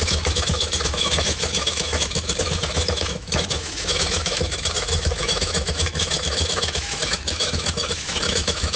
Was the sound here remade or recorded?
remade